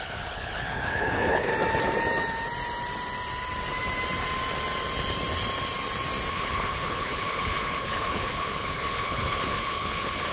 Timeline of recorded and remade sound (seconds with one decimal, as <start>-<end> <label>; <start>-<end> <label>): 0.0-1.5 remade; 1.5-6.3 recorded; 6.3-10.3 remade